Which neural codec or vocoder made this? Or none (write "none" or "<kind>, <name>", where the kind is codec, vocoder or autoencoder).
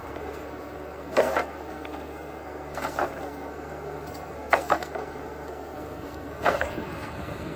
codec, SNAC